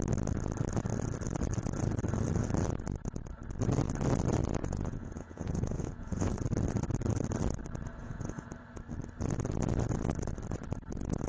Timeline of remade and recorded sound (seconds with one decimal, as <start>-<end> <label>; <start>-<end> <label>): 0.0-4.6 recorded; 4.6-6.3 remade; 6.3-8.0 recorded; 8.0-8.5 remade; 8.5-11.3 recorded